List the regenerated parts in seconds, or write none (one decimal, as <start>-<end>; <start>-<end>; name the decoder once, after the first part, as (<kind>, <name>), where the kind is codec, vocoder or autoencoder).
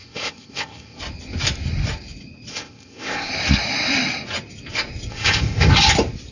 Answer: 0.0-1.0 (codec, ZipCodec); 2.5-3.3; 5.1-5.7